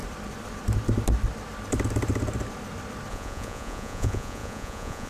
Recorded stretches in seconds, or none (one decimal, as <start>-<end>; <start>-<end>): 0.0-3.1